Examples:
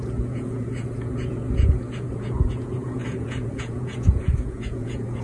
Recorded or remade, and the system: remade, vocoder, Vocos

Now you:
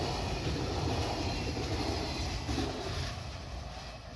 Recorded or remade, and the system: recorded